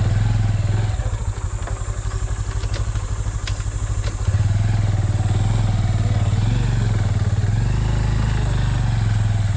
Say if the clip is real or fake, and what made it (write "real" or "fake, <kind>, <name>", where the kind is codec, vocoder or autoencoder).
real